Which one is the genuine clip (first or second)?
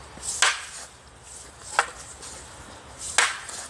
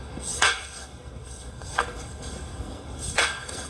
first